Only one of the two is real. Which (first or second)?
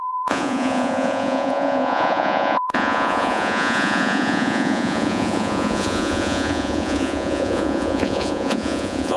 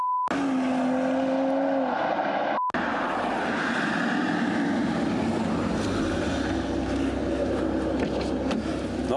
second